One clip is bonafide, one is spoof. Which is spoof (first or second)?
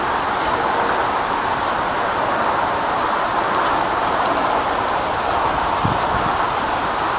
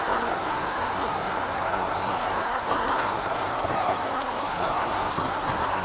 second